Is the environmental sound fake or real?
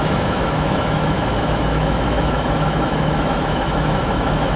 fake